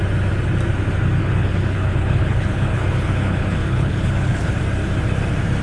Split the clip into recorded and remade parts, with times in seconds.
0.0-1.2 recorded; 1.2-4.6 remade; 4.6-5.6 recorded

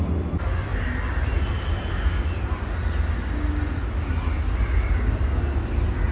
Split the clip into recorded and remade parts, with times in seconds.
0.0-6.1 recorded

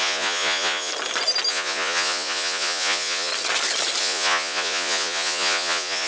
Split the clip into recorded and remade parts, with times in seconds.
0.0-0.9 remade; 0.9-1.5 recorded; 1.5-3.3 remade; 3.3-4.0 recorded; 4.0-6.1 remade

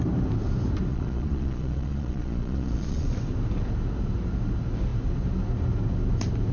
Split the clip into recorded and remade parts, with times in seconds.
0.0-0.9 recorded; 0.9-3.1 remade; 3.1-6.5 recorded

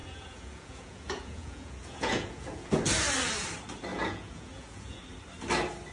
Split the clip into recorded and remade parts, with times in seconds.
0.0-2.7 remade; 2.7-3.9 recorded; 3.9-5.0 remade; 5.0-5.9 recorded

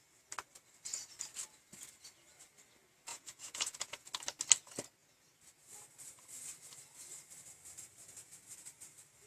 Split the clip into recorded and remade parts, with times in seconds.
0.0-3.1 recorded; 3.1-4.1 remade; 4.1-9.3 recorded